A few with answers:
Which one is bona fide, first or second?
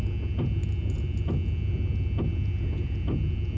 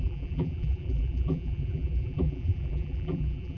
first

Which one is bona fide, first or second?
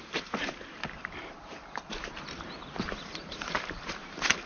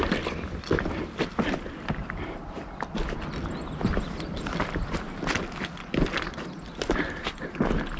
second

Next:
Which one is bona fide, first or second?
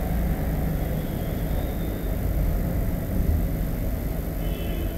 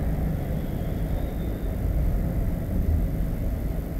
first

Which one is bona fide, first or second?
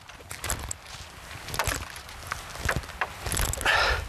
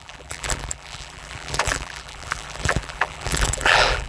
first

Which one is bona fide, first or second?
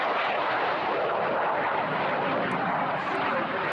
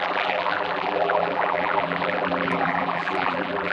first